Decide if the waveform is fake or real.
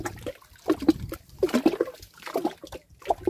real